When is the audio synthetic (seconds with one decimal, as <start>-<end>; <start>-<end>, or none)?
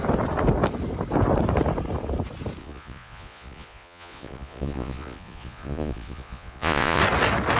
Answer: 2.6-7.0